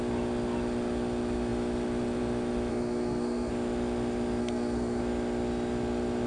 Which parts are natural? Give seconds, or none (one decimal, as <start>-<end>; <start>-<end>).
0.0-2.7; 3.5-4.4; 5.0-6.3